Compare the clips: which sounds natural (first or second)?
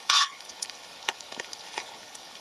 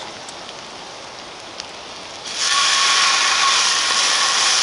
second